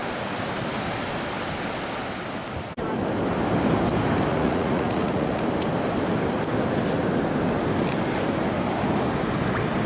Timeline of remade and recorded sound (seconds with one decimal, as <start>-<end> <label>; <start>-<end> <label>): 0.0-4.3 recorded; 4.3-5.4 remade; 5.4-9.9 recorded